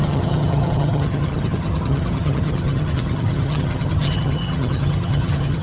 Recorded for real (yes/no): no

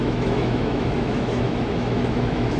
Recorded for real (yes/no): no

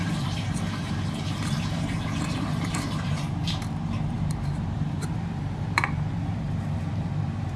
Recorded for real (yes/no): no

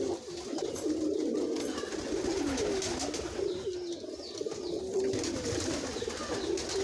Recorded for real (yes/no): yes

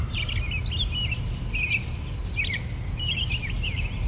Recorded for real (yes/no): yes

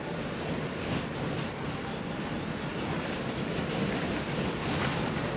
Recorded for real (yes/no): yes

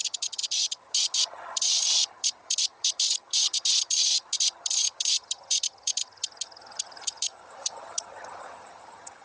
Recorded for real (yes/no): no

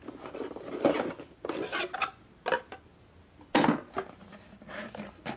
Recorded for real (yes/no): yes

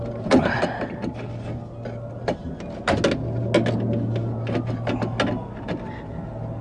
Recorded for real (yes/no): yes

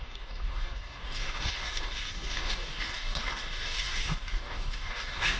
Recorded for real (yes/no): no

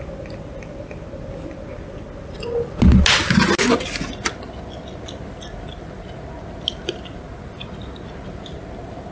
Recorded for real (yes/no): yes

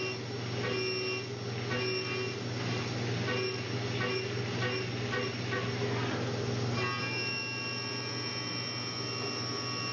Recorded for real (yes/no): yes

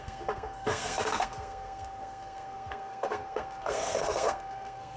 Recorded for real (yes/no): no